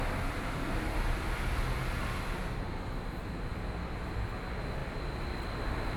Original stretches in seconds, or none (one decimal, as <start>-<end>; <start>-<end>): 0.0-6.0